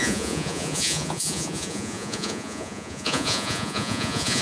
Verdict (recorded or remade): remade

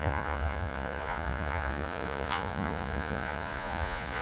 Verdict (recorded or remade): remade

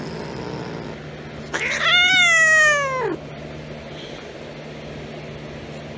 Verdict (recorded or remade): recorded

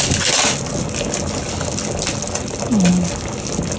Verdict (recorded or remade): recorded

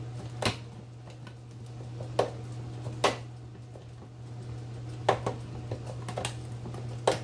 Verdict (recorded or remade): recorded